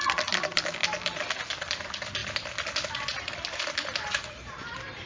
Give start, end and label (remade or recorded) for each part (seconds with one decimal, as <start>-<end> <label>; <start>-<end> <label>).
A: 0.0-0.8 remade; 0.8-1.4 recorded; 1.4-5.1 remade